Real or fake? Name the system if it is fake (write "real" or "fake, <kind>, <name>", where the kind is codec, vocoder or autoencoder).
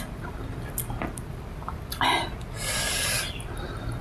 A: real